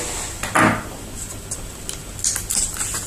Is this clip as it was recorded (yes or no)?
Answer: yes